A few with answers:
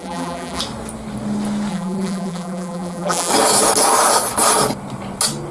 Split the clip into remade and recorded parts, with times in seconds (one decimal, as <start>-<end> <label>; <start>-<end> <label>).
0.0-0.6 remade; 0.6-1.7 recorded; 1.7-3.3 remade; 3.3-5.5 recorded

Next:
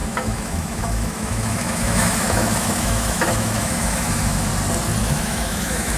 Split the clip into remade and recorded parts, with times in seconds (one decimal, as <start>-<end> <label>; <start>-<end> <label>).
0.0-4.5 remade; 4.5-5.0 recorded; 5.0-6.0 remade

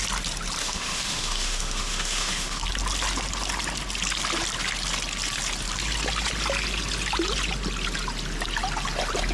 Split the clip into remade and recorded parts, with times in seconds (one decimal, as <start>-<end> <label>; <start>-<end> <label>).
0.0-0.6 recorded; 0.6-2.6 remade; 2.6-9.3 recorded